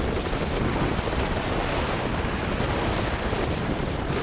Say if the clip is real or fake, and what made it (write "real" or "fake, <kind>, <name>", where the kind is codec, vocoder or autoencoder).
real